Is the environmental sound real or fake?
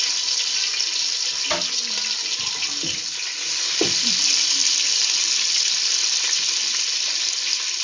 real